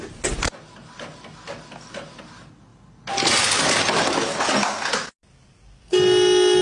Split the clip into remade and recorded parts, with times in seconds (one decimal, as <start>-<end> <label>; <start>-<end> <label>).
0.0-6.6 recorded